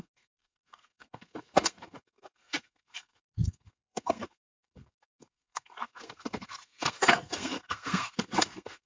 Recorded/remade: remade